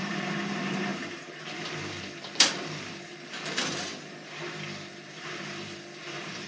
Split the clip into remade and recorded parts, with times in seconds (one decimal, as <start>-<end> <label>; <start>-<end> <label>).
0.0-3.9 remade; 3.9-4.9 recorded; 4.9-6.5 remade